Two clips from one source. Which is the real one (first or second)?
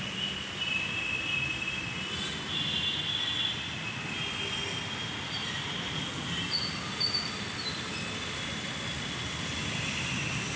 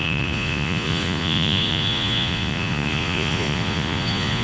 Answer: first